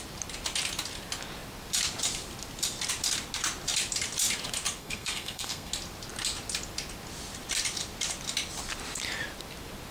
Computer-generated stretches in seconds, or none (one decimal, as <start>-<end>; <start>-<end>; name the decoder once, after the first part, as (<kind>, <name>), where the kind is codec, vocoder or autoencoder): 4.8-5.7 (codec, SNAC)